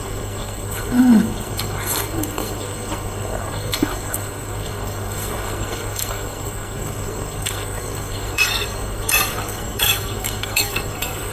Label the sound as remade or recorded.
remade